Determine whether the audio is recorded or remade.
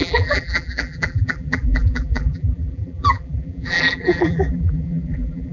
remade